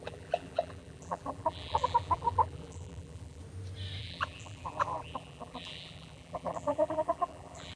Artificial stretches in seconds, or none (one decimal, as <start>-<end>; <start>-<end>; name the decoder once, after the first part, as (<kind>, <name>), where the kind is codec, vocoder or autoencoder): 0.0-3.4 (vocoder, BigVGAN v2); 4.0-7.8